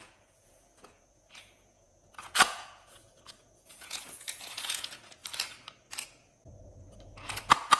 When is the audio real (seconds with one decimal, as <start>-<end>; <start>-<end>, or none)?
5.2-6.9